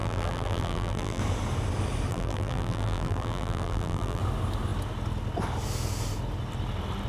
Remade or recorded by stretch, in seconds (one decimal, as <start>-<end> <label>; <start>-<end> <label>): 0.0-1.2 remade; 1.2-2.1 recorded; 2.1-4.2 remade; 4.2-7.1 recorded